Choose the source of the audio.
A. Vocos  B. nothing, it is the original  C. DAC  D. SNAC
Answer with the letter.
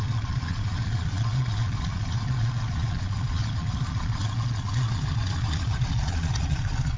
A